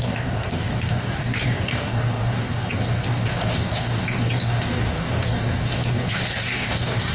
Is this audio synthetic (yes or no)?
yes